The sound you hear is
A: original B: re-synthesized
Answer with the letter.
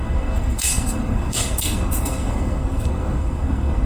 B